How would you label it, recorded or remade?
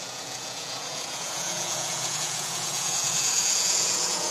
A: remade